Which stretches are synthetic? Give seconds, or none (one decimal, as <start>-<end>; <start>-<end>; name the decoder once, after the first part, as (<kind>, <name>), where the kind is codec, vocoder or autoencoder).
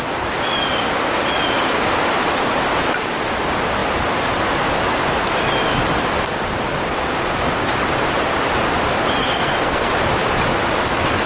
9.2-9.9 (codec, SNAC)